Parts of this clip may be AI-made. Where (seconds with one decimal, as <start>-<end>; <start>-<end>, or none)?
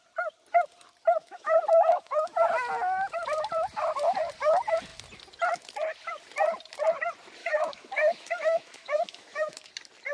1.2-2.3; 7.4-9.7